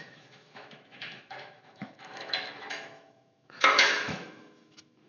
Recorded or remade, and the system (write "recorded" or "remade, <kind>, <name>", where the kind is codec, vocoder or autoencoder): remade, autoencoder, DAC-VAE